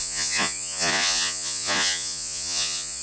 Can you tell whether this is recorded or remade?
remade